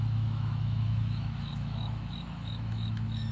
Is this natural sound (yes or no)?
no